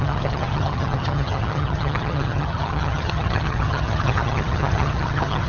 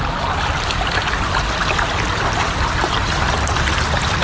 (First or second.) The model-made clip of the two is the first